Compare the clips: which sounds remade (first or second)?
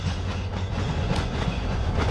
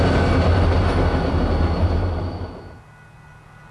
first